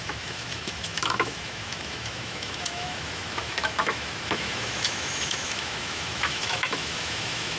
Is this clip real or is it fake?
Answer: fake